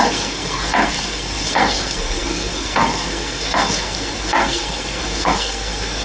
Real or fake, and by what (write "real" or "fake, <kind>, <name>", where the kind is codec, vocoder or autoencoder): fake, codec, SNAC